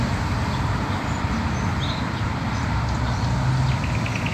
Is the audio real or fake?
real